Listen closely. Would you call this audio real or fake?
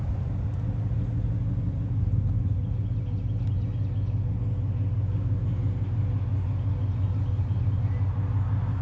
real